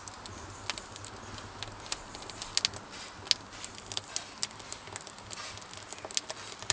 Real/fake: real